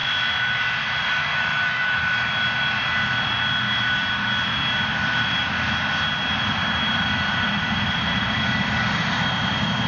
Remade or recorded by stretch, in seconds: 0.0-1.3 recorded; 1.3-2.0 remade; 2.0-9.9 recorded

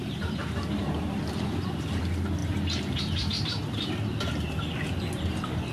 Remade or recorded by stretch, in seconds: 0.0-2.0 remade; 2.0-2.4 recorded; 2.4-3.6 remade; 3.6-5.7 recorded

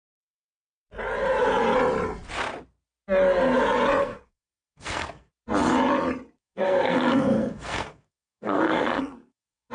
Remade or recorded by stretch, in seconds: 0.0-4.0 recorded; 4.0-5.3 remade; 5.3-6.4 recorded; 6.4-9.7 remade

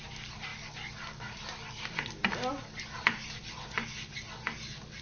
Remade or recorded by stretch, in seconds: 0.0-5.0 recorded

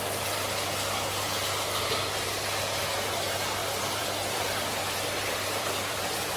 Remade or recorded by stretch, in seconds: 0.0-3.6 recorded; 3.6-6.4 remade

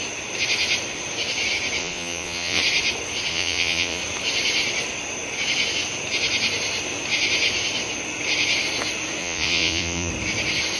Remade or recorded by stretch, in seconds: 0.0-1.8 recorded; 1.8-2.6 remade; 2.6-3.3 recorded; 3.3-4.0 remade; 4.0-9.2 recorded; 9.2-10.1 remade; 10.1-10.8 recorded

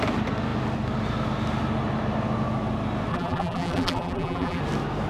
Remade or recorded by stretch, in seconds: 0.0-3.1 recorded; 3.1-4.6 remade; 4.6-5.1 recorded